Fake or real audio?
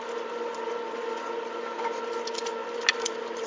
real